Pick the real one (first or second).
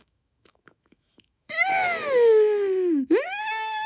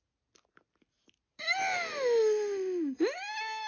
second